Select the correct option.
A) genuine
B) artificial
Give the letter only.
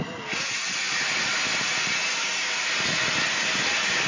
A